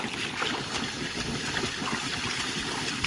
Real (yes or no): yes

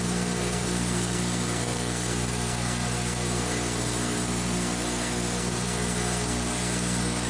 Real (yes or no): no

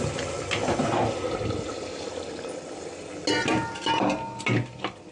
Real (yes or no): yes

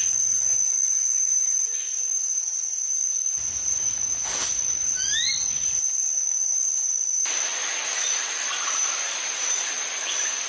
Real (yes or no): no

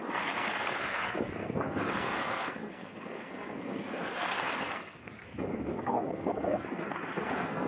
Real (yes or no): no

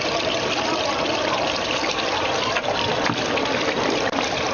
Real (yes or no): yes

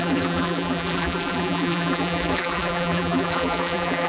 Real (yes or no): no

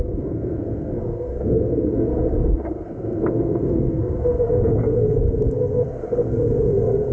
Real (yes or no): no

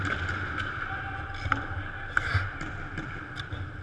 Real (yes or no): yes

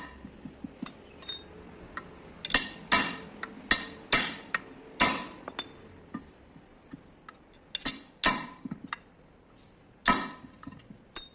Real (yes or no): yes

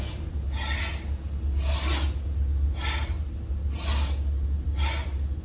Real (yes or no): yes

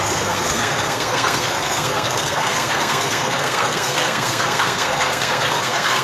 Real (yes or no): no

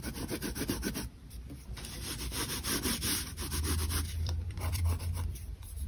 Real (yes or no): no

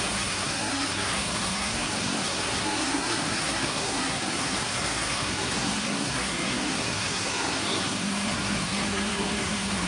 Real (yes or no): no